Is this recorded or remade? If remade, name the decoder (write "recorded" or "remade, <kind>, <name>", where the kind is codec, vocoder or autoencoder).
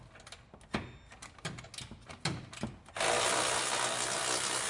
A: recorded